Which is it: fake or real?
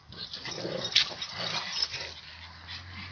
real